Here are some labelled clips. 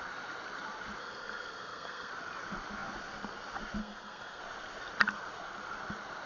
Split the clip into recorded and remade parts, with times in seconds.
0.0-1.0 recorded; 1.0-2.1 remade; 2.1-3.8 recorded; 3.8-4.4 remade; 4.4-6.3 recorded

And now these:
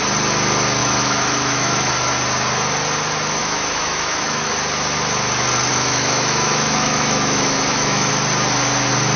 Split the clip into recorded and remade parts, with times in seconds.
0.0-0.8 recorded; 0.8-1.9 remade; 1.9-3.4 recorded; 3.4-4.5 remade; 4.5-5.7 recorded; 5.7-8.1 remade; 8.1-9.2 recorded

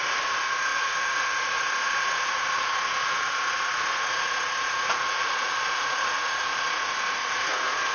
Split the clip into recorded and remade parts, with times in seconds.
0.0-7.9 remade

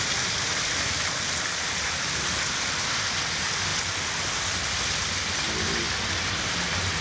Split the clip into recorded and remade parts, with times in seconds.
0.0-7.0 recorded

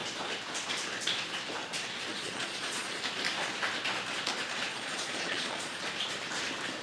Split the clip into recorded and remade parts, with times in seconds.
0.0-2.1 recorded; 2.1-3.0 remade; 3.0-4.7 recorded; 4.7-5.8 remade; 5.8-6.8 recorded

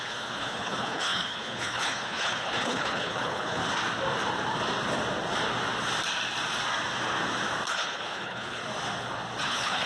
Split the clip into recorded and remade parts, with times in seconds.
0.0-3.6 remade; 3.6-7.7 recorded; 7.7-8.6 remade; 8.6-9.4 recorded; 9.4-9.9 remade

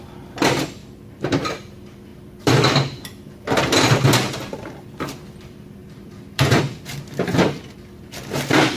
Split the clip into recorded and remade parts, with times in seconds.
0.0-0.8 recorded; 0.8-1.4 remade; 1.4-5.8 recorded; 5.8-6.6 remade; 6.6-8.8 recorded